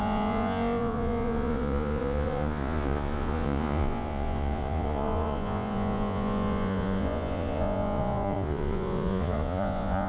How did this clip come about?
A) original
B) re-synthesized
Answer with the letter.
B